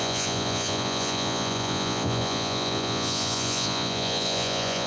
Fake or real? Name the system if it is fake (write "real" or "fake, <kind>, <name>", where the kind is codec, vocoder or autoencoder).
fake, vocoder, Vocos